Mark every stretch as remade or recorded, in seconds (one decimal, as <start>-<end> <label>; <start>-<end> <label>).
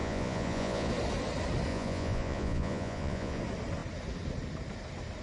0.0-0.9 remade; 0.9-1.7 recorded; 1.7-3.4 remade; 3.4-5.2 recorded